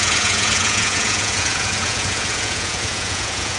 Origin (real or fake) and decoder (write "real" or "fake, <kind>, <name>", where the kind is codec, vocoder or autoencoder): fake, vocoder, Vocos